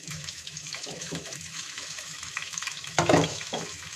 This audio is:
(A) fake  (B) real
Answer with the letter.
A